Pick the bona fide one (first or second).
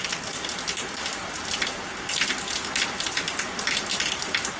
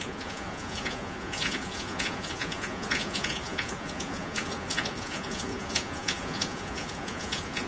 first